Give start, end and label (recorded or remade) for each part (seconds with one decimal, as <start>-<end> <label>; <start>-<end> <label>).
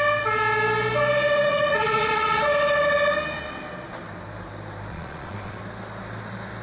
0.0-1.5 recorded; 1.5-2.4 remade; 2.4-4.9 recorded; 4.9-5.6 remade; 5.6-6.6 recorded